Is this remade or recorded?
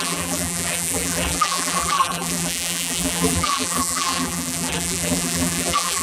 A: remade